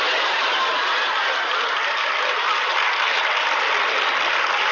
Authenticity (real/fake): real